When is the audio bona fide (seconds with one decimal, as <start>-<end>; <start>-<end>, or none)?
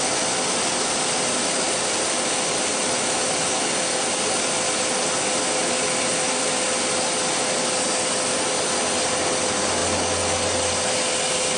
0.0-11.6